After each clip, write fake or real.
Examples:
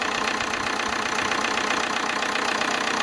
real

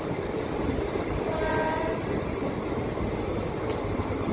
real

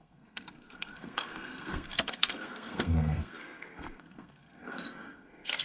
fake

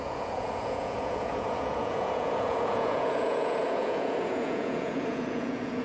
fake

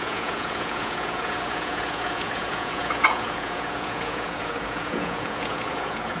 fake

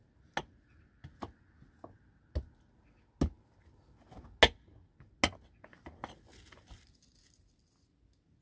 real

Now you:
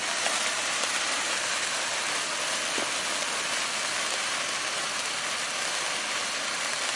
real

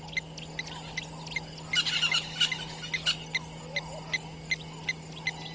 real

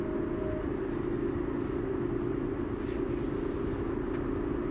real